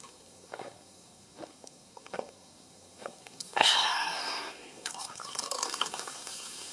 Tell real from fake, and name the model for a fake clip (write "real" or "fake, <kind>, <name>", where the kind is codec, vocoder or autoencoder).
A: fake, codec, SNAC